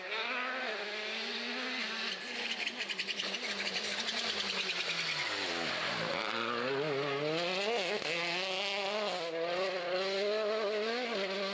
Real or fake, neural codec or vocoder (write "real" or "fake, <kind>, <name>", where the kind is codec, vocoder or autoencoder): real